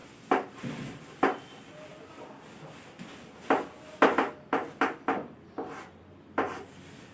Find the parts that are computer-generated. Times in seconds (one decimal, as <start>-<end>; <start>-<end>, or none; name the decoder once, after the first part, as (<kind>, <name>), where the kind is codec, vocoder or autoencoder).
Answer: none